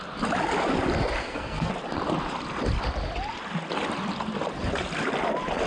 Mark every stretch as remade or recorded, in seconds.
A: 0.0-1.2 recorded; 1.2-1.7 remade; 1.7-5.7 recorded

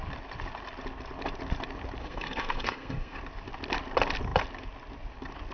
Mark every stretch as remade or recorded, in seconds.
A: 0.0-2.0 recorded; 2.0-3.2 remade; 3.2-5.5 recorded

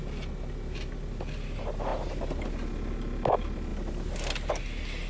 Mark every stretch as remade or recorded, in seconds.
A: 0.0-5.1 recorded

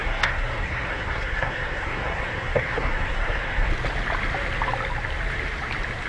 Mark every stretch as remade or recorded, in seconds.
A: 0.0-3.7 remade; 3.7-6.1 recorded

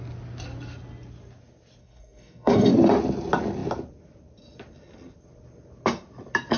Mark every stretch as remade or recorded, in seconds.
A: 0.0-1.8 recorded; 1.8-2.7 remade; 2.7-6.6 recorded

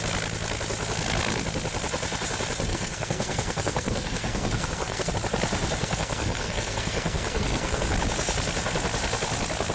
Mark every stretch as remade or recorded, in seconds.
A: 0.0-2.7 recorded; 2.7-5.1 remade; 5.1-5.8 recorded; 5.8-7.9 remade; 7.9-9.7 recorded